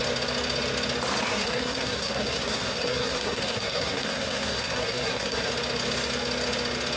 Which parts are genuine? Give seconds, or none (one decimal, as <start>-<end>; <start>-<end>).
0.0-1.3; 5.5-7.0